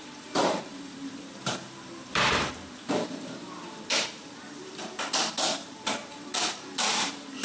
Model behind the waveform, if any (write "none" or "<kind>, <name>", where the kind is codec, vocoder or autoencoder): vocoder, BigVGAN v2